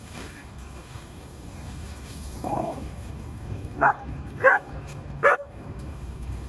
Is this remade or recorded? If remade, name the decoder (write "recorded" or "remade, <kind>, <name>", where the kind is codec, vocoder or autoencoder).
remade, codec, DAC